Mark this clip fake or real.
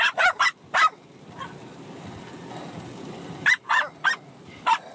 real